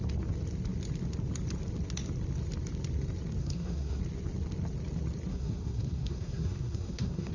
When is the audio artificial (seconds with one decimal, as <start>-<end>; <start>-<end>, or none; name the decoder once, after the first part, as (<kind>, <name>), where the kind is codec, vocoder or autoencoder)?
3.4-4.0 (codec, SNAC); 5.3-7.3